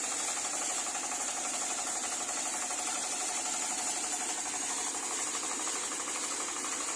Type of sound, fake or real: real